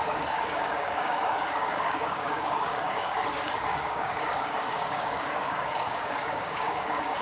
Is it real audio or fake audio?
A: fake